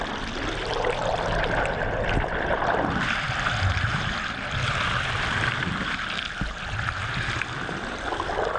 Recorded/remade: recorded